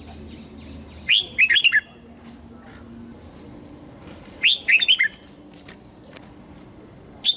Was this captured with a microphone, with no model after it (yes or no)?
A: yes